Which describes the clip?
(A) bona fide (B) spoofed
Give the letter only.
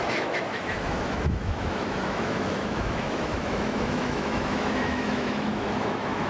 B